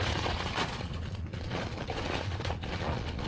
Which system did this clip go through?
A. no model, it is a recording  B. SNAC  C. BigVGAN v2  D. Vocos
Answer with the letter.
D